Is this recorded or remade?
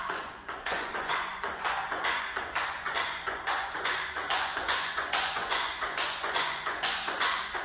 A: remade